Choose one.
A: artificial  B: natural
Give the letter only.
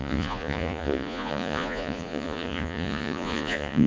A